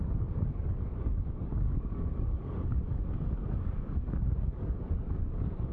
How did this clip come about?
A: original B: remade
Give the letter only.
B